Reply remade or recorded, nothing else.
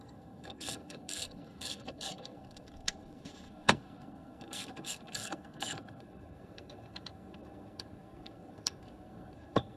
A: remade